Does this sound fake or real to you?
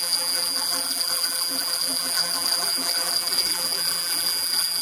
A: fake